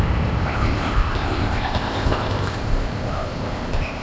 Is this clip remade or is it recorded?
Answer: remade